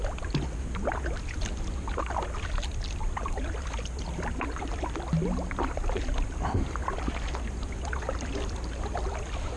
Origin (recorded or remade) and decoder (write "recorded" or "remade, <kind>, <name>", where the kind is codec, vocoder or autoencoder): recorded